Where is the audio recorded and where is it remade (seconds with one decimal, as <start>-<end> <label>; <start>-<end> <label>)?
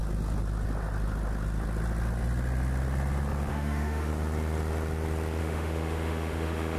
0.0-3.5 recorded; 3.5-4.1 remade; 4.1-5.4 recorded; 5.4-6.8 remade